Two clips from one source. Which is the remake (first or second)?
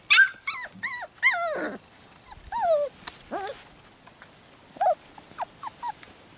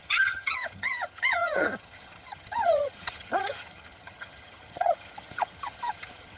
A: second